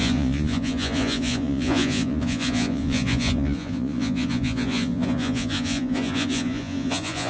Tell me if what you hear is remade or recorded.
remade